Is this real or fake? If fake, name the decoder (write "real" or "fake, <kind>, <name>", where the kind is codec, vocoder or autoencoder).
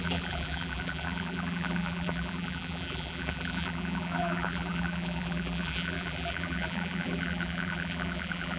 fake, vocoder, BigVGAN v2